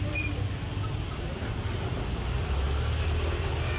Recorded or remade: recorded